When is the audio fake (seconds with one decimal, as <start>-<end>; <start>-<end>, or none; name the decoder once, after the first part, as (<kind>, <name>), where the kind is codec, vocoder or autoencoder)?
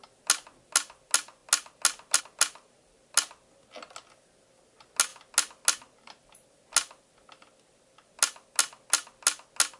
none